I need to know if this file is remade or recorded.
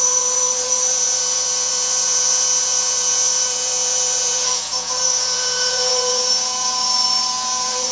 remade